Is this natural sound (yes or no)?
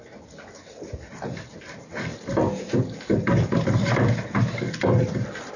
yes